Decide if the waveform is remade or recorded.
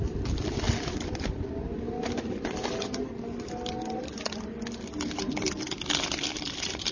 recorded